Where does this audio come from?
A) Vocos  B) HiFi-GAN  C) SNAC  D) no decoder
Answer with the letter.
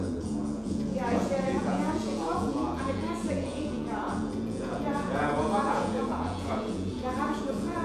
A